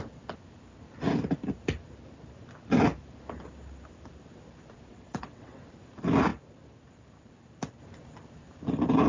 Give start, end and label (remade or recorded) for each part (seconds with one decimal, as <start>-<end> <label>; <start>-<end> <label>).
0.0-4.9 recorded; 4.9-5.6 remade; 5.6-9.1 recorded